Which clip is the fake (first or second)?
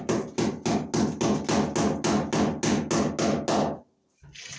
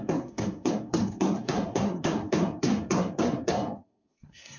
second